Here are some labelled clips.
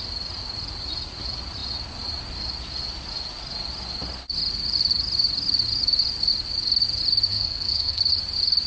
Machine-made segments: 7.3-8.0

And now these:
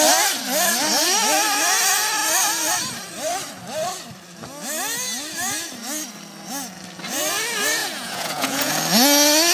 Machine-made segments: 7.8-8.7

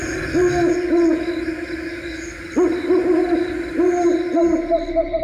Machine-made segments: none

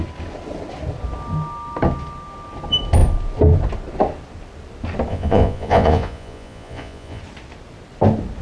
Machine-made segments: 5.1-7.2

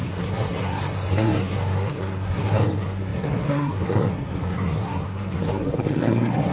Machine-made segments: 0.0-6.5

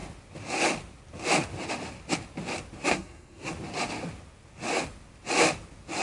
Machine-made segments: 2.9-3.5